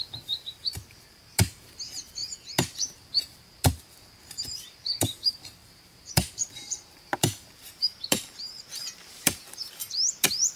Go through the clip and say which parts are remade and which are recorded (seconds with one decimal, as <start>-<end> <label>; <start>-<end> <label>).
0.0-10.6 remade